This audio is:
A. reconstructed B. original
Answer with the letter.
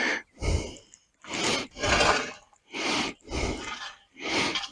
B